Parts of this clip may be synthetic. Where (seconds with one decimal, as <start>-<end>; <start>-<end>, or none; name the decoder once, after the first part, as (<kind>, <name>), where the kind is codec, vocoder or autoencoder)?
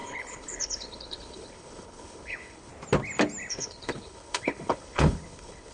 0.0-2.7 (codec, HILCodec); 3.5-5.7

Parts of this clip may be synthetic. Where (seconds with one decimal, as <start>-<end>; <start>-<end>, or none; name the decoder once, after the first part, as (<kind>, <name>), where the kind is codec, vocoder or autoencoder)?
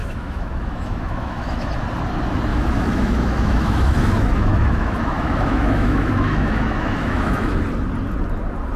0.0-1.7 (autoencoder, DAC-VAE); 2.5-7.6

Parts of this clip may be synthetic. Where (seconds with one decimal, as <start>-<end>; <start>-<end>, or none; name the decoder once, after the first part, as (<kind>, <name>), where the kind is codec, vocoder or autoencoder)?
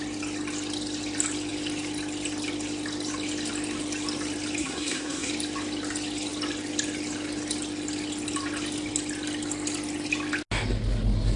4.6-5.3 (codec, SNAC)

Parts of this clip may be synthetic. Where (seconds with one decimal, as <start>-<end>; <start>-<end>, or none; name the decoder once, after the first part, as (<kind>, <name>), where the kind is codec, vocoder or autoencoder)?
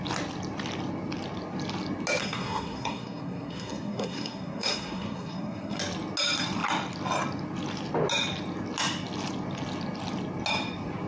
2.2-5.8 (codec, SNAC)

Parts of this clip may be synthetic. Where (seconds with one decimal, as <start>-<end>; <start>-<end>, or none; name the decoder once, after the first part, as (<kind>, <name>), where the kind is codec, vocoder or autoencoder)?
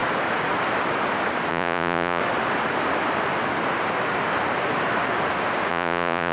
1.5-2.2 (vocoder, Vocos); 5.7-6.3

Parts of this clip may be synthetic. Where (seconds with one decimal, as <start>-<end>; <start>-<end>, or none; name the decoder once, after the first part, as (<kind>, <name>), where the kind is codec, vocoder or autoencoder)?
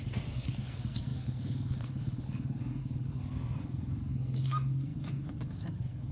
0.0-6.1 (codec, SNAC)